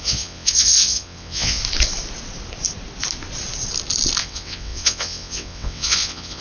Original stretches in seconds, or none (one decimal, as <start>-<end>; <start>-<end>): 1.6-4.2